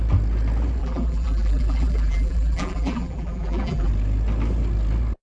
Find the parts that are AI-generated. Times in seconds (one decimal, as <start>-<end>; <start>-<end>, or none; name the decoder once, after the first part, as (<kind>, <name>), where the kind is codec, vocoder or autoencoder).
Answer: 0.8-3.9 (vocoder, BigVGAN v2)